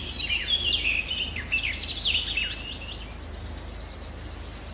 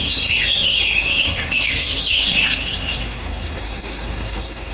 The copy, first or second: second